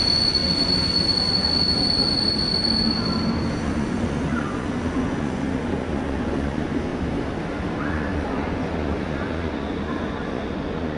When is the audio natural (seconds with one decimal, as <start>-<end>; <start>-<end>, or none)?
0.4-3.6; 6.9-7.8